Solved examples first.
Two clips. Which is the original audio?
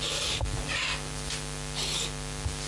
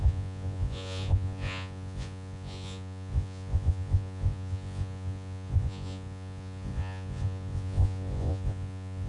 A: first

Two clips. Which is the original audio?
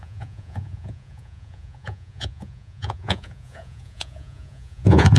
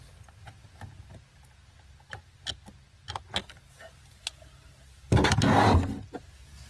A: second